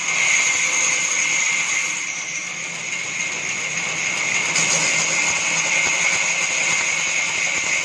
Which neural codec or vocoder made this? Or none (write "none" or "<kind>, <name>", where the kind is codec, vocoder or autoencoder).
none